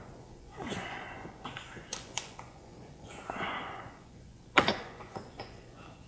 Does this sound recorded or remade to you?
remade